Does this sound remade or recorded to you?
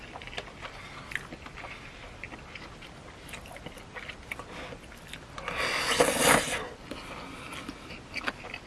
recorded